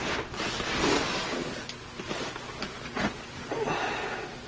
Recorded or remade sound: recorded